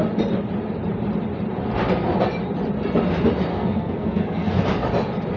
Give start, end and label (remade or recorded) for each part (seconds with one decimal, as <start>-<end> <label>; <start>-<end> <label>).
0.0-3.5 recorded; 3.5-4.6 remade; 4.6-5.4 recorded